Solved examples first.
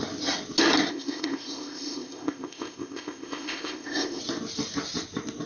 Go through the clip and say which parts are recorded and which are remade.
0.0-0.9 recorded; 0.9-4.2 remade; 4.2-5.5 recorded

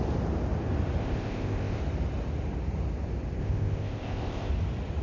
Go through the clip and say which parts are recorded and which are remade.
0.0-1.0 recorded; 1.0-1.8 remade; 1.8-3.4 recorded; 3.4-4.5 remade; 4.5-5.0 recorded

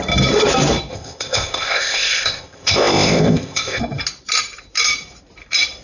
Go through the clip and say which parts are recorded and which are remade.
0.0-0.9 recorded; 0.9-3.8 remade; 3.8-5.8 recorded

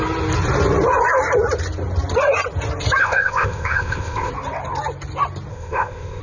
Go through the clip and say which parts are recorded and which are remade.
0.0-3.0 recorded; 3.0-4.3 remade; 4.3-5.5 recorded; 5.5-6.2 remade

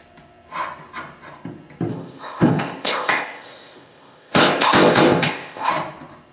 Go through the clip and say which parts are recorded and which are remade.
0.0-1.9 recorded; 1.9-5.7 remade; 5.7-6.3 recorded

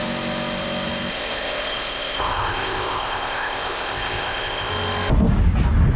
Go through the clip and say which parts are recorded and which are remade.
0.0-1.1 recorded; 1.1-4.7 remade; 4.7-6.0 recorded